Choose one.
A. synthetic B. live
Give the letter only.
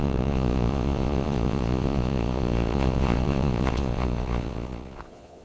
A